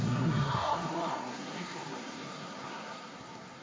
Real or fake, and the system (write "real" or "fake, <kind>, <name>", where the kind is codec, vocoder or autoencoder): fake, codec, SNAC